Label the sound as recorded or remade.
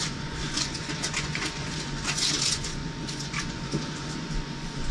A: remade